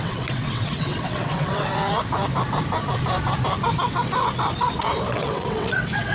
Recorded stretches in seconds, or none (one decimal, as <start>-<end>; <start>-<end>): 1.7-5.1